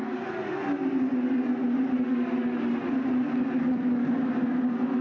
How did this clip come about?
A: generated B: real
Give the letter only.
B